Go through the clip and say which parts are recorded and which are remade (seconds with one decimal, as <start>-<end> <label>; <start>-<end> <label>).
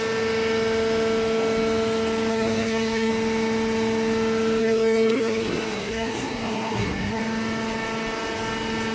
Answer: 0.0-2.3 recorded; 2.3-3.1 remade; 3.1-4.6 recorded; 4.6-7.2 remade; 7.2-8.9 recorded